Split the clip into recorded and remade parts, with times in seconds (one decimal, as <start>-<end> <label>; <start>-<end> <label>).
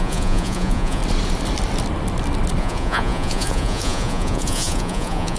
0.0-1.0 remade; 1.0-2.6 recorded; 2.6-5.4 remade